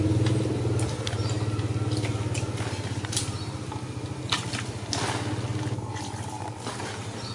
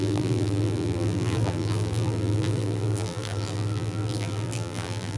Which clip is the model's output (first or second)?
second